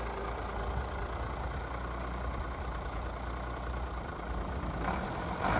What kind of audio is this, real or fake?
real